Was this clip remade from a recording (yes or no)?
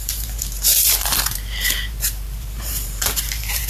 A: yes